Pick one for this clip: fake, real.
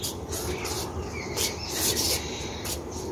real